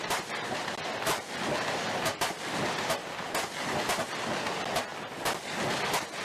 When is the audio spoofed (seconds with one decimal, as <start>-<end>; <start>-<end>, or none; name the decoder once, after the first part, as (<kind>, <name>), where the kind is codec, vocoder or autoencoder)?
none